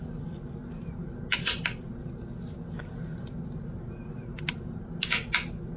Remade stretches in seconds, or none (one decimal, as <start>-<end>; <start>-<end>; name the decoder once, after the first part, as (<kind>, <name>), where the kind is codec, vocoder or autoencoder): none

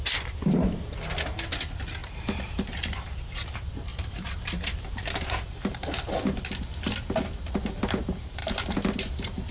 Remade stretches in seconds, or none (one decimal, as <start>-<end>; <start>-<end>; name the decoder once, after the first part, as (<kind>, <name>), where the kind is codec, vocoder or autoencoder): 2.0-3.2 (vocoder, BigVGAN v2); 3.9-6.5; 8.4-9.5

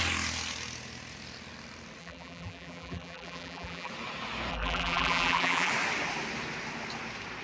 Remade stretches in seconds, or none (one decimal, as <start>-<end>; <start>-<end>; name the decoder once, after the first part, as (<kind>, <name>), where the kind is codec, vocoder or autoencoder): 2.0-3.9 (vocoder, BigVGAN v2); 4.5-5.7

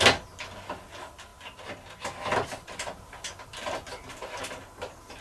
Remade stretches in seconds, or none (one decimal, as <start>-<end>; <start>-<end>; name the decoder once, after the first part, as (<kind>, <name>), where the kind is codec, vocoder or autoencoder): none

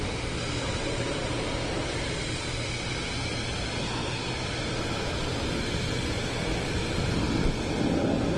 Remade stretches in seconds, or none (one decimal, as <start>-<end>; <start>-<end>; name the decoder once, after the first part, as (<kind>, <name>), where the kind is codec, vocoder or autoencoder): 0.0-5.3 (vocoder, BigVGAN v2); 6.0-6.8

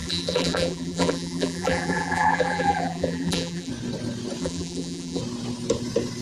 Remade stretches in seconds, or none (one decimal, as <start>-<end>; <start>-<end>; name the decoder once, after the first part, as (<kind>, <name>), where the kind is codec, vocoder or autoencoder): 0.0-3.7 (vocoder, BigVGAN v2); 4.4-5.2